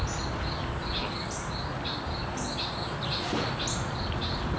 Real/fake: real